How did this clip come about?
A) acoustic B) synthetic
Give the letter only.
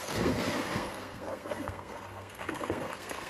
B